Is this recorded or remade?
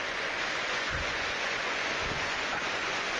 remade